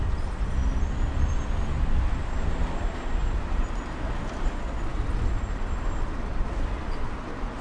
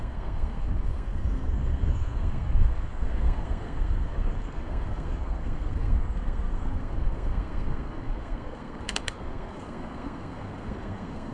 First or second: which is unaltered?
first